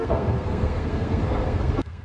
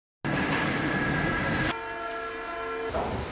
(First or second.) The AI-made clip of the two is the first